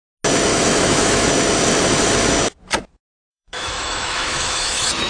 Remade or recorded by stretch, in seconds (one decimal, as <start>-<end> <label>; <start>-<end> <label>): 0.0-0.5 recorded; 0.5-1.3 remade; 1.3-3.3 recorded; 3.3-5.1 remade